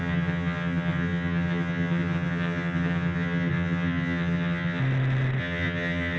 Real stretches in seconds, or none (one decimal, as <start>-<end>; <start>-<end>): 4.8-5.4